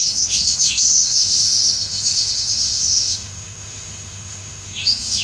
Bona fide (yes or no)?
no